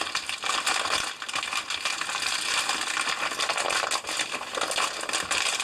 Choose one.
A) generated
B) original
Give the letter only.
B